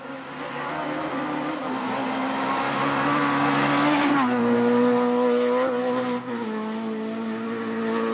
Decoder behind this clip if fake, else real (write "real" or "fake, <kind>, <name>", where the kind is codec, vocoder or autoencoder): real